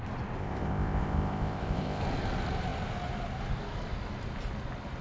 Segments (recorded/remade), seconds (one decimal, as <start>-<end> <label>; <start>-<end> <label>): 0.0-0.4 recorded; 0.4-2.0 remade; 2.0-5.0 recorded